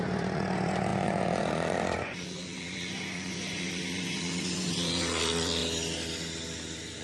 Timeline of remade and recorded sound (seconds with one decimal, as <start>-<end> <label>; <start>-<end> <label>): 0.0-5.6 remade; 5.6-7.0 recorded